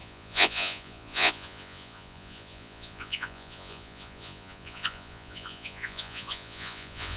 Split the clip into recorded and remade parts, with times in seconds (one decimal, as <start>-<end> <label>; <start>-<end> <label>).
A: 0.0-7.2 remade